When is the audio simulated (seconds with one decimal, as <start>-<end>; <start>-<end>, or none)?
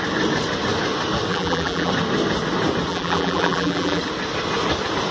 1.3-1.9; 2.9-4.0